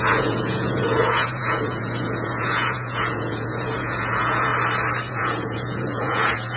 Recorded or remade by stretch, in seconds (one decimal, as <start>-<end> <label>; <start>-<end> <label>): 0.0-4.5 remade; 4.5-5.1 recorded; 5.1-6.6 remade